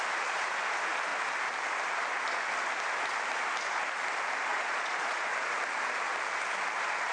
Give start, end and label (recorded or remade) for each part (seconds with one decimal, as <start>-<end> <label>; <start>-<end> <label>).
0.0-4.5 recorded; 4.5-5.3 remade; 5.3-7.1 recorded